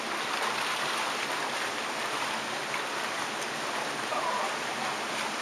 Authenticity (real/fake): real